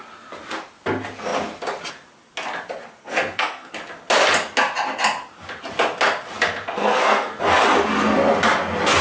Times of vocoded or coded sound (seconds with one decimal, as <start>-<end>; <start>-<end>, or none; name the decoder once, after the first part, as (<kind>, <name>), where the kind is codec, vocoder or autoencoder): 3.0-3.7 (codec, SNAC); 6.8-7.4